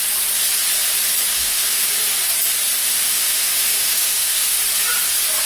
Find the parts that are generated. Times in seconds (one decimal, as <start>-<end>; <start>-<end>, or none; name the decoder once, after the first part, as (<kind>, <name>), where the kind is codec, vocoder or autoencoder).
1.3-1.9 (autoencoder, DAC-VAE); 2.8-4.6